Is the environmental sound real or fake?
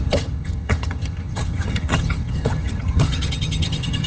fake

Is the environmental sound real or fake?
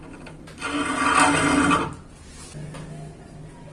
real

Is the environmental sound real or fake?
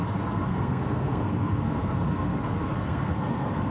fake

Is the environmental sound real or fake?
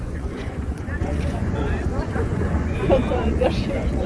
fake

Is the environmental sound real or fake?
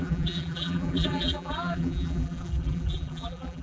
fake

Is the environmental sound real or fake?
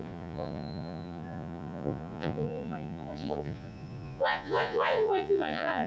fake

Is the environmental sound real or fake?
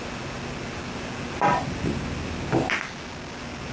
real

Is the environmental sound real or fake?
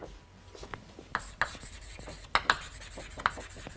real